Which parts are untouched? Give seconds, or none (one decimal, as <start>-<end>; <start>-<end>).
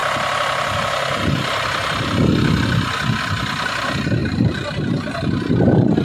0.0-4.2; 5.1-6.0